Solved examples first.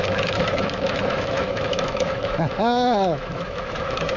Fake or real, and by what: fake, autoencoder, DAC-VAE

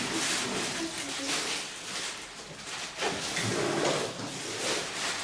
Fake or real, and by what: real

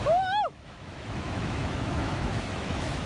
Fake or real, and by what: fake, autoencoder, DAC-VAE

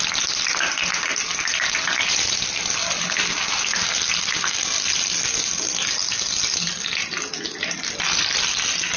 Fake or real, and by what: real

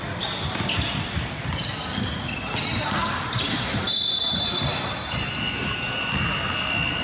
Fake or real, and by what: real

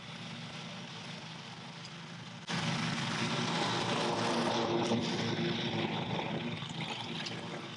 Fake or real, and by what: real